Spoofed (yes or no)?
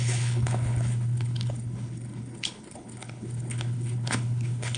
yes